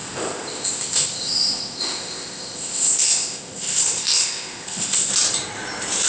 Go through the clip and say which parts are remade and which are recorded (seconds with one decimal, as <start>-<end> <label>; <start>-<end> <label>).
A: 0.0-5.1 remade; 5.1-6.1 recorded